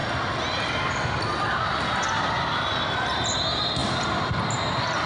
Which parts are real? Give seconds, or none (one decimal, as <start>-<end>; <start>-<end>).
0.0-5.1